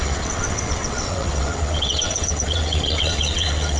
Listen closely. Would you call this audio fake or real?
fake